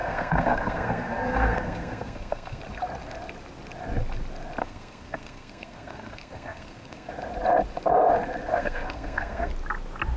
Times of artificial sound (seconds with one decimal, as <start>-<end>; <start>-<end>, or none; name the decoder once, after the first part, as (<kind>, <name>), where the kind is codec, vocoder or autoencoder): 0.0-2.6 (codec, SNAC); 4.6-7.1; 8.5-9.5